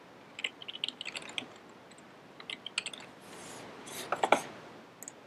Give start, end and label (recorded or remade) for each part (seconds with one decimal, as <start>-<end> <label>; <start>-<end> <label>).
0.0-5.3 recorded